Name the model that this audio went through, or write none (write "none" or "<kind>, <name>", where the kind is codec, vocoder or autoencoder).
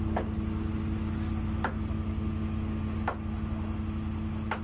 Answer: none